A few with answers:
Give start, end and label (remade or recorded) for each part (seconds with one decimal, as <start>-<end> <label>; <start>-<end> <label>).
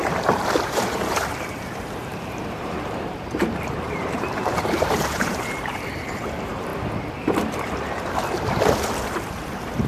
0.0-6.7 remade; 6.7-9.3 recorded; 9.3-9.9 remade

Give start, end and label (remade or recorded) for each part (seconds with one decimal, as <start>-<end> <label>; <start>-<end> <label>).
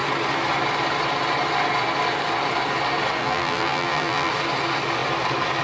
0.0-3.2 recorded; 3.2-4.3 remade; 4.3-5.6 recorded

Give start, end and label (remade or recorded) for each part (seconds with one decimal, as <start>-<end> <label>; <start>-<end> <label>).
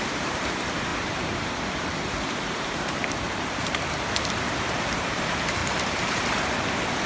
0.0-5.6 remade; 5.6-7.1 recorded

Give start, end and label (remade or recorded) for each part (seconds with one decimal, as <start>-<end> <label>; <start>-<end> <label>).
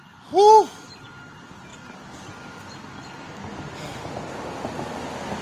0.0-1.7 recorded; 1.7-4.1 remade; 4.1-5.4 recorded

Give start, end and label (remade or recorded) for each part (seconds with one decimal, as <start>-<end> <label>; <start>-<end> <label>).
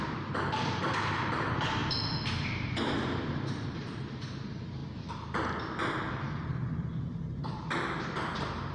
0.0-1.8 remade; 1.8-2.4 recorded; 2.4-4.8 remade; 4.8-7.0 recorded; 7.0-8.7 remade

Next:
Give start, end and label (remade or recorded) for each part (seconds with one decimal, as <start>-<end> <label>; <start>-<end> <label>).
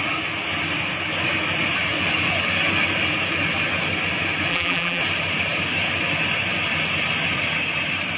0.0-4.5 recorded; 4.5-5.0 remade; 5.0-8.2 recorded